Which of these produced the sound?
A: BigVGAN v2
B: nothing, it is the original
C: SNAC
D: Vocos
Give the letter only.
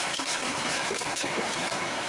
C